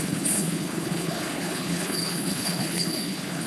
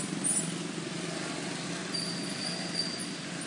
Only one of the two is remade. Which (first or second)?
first